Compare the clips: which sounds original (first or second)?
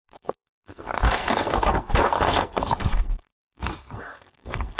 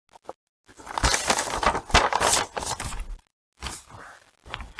second